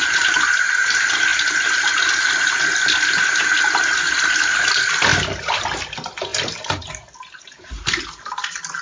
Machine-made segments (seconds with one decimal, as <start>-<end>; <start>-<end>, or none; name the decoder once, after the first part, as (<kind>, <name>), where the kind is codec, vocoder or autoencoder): none

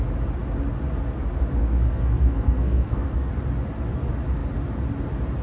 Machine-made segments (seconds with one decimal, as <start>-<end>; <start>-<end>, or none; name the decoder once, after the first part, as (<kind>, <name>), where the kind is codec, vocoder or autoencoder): 1.6-3.3 (codec, SNAC)

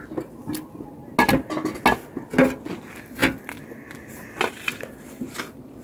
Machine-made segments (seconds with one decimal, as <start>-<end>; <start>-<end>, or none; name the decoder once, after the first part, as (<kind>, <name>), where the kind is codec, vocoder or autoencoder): none

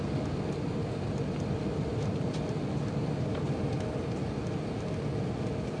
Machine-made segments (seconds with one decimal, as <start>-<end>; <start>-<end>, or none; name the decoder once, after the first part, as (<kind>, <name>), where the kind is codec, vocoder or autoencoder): none

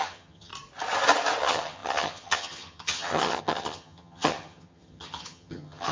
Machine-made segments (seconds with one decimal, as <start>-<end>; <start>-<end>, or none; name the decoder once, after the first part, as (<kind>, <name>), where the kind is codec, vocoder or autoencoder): 0.0-0.5 (vocoder, HiFi-GAN); 1.4-5.9

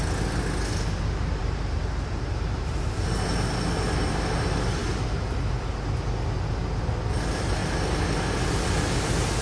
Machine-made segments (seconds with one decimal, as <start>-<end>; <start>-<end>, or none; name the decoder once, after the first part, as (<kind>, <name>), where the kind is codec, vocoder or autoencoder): 1.4-2.9 (vocoder, BigVGAN v2); 4.8-5.4

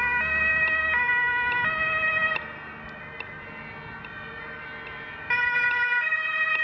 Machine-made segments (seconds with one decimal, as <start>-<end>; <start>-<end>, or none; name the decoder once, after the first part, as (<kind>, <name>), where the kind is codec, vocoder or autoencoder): none